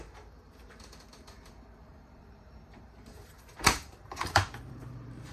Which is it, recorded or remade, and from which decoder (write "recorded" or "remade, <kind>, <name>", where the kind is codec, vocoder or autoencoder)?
remade, vocoder, BigVGAN v2